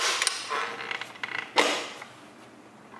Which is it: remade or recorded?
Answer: recorded